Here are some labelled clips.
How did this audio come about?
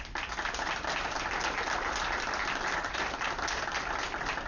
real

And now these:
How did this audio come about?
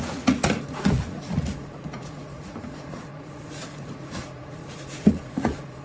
fake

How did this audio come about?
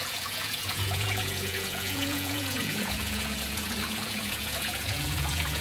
fake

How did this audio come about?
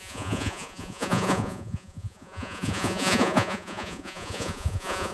fake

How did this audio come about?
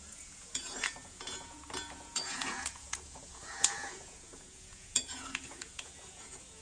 fake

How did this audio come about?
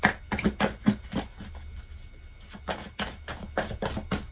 real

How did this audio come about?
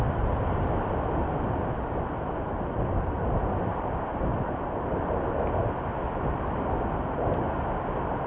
real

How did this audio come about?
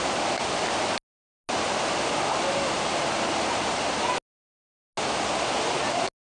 real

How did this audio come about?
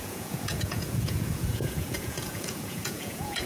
fake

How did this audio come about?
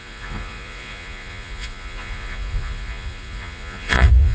fake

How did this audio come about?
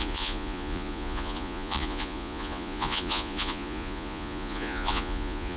fake